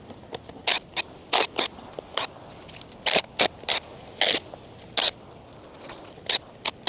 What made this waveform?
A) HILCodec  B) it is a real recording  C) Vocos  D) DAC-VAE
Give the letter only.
B